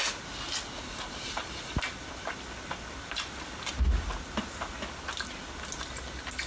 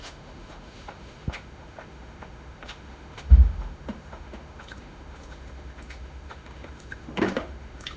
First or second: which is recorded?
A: first